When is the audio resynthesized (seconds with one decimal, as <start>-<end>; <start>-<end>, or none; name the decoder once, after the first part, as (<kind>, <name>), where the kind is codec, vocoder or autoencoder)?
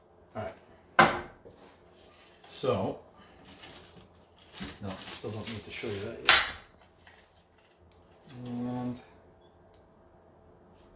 2.2-3.0 (vocoder, BigVGAN v2)